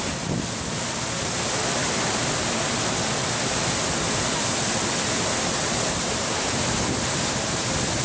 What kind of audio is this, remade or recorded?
recorded